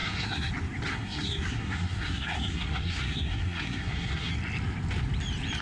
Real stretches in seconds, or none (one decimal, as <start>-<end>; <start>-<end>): 0.5-0.9; 4.3-5.6